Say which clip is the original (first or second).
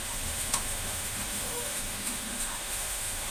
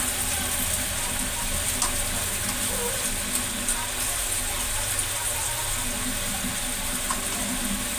second